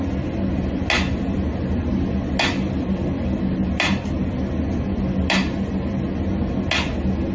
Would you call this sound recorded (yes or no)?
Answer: yes